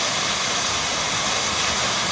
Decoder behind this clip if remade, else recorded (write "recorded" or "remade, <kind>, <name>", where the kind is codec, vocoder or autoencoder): recorded